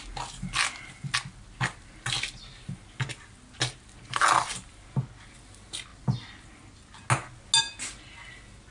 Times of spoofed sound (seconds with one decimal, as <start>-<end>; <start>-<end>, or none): none